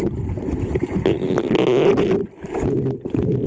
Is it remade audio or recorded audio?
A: recorded